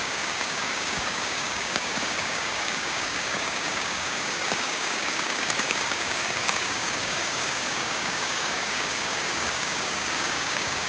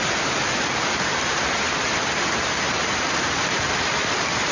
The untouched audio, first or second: second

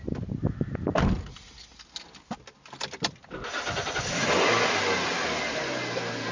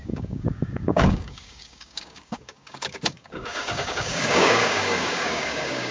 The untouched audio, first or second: first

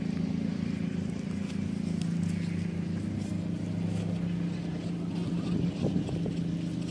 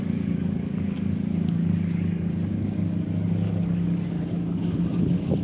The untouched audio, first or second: first